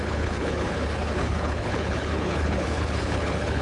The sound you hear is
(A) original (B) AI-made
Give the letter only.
B